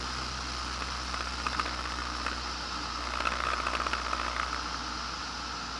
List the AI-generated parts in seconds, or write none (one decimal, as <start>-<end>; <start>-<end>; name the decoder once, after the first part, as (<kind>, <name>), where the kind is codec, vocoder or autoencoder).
none